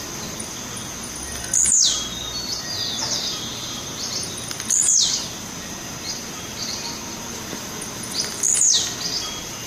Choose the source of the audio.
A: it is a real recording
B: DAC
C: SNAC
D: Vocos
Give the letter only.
A